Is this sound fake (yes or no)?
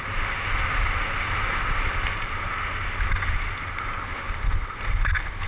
no